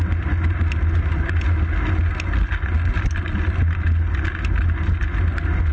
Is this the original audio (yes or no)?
yes